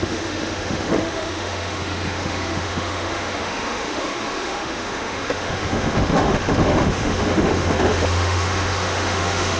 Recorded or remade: remade